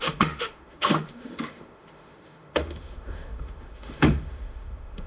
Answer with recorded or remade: remade